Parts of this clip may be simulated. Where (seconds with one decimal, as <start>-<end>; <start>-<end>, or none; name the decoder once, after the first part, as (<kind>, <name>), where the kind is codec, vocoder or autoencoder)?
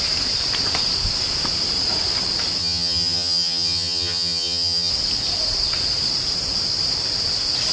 2.6-4.9 (vocoder, HiFi-GAN)